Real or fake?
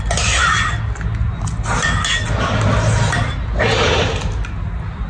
real